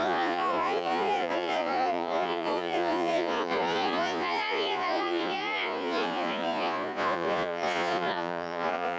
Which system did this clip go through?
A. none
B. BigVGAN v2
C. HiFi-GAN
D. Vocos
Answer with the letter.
D